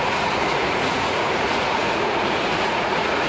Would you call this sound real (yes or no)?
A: no